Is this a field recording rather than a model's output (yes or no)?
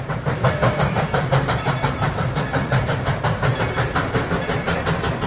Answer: no